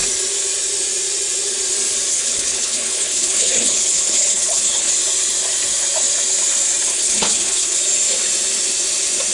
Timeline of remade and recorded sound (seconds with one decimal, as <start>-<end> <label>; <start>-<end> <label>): 0.0-2.1 recorded; 2.1-4.9 remade; 4.9-6.9 recorded; 6.9-7.8 remade; 7.8-9.3 recorded